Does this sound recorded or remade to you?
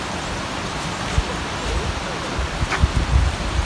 recorded